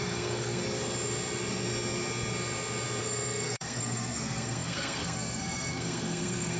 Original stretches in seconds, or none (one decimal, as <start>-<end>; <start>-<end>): 0.6-3.0